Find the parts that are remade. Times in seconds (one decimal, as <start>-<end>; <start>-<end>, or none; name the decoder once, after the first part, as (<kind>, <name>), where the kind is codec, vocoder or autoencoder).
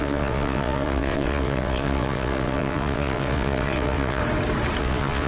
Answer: 0.0-4.2 (vocoder, WaveNeXt); 4.8-5.3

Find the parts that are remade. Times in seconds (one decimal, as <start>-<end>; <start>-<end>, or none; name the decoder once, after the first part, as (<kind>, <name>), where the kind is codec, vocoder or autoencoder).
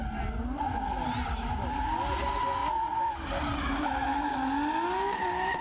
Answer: none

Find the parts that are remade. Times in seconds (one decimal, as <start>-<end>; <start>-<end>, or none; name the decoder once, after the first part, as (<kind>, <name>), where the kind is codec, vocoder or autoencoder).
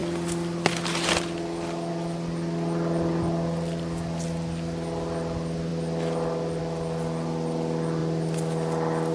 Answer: none